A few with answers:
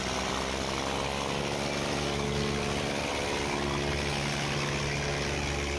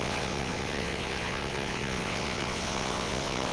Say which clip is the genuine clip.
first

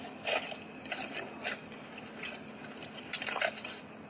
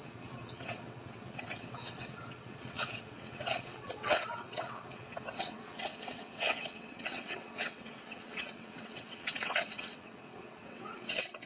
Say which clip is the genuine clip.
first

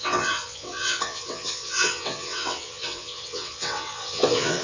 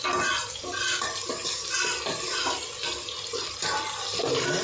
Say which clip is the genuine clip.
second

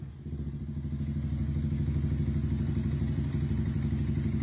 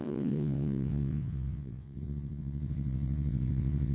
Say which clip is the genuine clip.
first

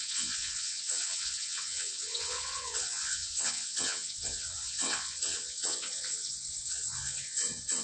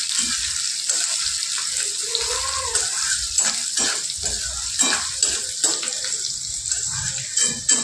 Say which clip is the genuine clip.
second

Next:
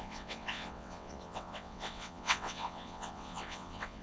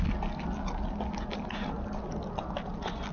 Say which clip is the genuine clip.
second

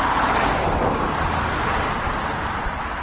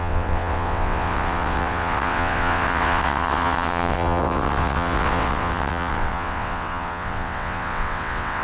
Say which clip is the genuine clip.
first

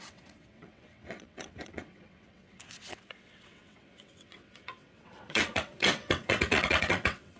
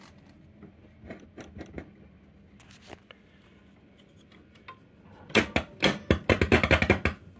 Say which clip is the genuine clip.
second